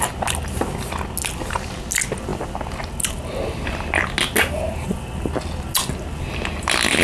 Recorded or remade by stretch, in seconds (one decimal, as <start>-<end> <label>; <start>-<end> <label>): 0.0-7.0 recorded